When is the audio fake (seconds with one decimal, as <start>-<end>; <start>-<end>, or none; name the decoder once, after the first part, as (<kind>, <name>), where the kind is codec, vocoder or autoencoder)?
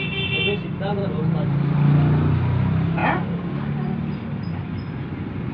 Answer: none